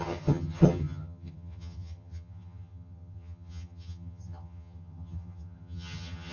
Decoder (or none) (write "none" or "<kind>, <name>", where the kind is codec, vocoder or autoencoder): vocoder, HiFi-GAN